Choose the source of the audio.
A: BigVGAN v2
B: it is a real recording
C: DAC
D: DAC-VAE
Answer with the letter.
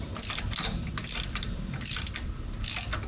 B